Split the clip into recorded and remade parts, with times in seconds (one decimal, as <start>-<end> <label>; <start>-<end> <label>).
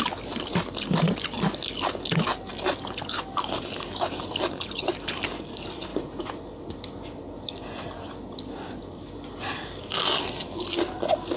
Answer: 0.0-5.9 recorded; 5.9-6.4 remade; 6.4-11.4 recorded